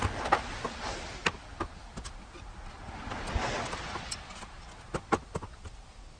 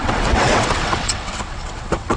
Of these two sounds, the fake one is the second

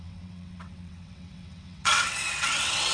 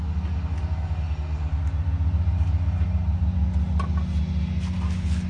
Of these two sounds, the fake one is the first